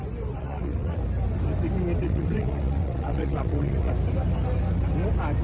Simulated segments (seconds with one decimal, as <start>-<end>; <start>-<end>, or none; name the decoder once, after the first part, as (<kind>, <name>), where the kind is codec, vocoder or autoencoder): 0.4-1.0 (vocoder, WaveNeXt); 2.0-3.9